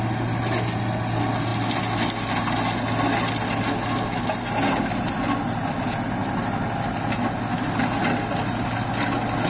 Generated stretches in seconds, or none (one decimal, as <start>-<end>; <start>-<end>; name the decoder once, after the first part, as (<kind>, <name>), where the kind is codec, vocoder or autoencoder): none